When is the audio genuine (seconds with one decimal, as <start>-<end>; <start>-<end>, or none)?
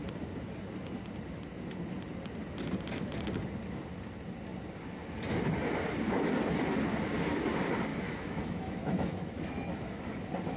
0.0-7.9; 10.0-10.6